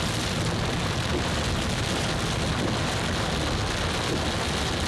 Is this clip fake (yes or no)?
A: no